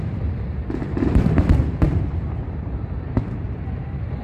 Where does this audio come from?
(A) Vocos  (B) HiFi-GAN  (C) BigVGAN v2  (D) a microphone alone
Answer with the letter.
C